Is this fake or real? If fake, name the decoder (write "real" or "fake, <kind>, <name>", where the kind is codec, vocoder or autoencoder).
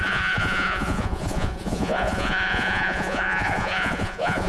fake, vocoder, Vocos